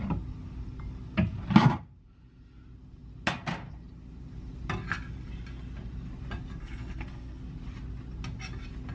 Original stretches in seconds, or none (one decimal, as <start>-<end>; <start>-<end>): 0.0-6.6; 7.4-8.9